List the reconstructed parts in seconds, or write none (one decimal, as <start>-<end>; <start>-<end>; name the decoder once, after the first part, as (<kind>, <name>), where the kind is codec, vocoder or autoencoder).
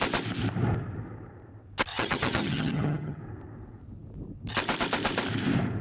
1.9-3.2 (vocoder, HiFi-GAN)